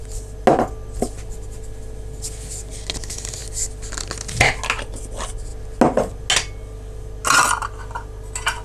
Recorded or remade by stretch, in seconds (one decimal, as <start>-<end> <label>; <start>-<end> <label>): 0.0-8.6 recorded